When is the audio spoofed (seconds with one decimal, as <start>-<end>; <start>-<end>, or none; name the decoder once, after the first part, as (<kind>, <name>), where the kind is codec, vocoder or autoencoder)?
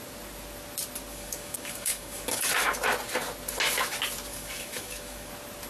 1.1-2.5 (codec, DAC); 4.3-5.3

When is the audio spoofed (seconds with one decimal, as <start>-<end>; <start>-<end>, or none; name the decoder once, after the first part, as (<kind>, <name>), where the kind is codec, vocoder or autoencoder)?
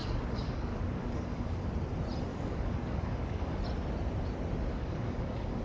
0.0-1.7 (codec, DAC); 2.3-3.6; 4.7-5.6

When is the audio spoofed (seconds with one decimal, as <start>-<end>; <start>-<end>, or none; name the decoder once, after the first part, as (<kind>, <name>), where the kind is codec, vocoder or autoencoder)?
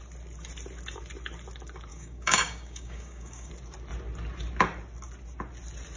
1.9-3.5 (codec, DAC)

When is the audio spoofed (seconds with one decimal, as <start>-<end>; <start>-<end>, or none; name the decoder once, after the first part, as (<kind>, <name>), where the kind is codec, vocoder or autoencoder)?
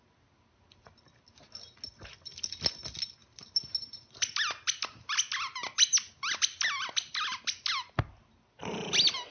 none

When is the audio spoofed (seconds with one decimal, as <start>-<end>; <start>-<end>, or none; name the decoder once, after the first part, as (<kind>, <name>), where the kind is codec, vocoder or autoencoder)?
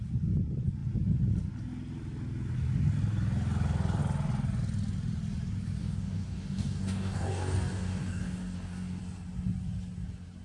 5.8-9.0 (codec, DAC)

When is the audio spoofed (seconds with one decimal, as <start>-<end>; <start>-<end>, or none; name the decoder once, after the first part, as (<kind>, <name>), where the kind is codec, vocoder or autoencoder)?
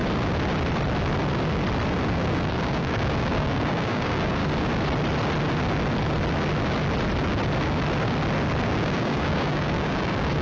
2.1-4.4 (codec, DAC); 8.6-10.4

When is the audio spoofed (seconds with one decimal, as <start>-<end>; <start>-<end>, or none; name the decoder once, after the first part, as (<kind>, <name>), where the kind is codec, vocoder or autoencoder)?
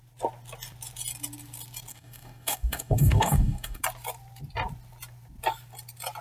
1.9-3.8 (codec, DAC)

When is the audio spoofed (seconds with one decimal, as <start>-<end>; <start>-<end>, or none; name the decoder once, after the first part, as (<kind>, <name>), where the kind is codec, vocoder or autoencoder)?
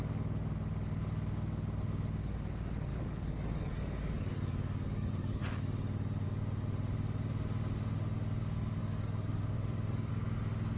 2.9-5.4 (codec, DAC); 8.8-10.1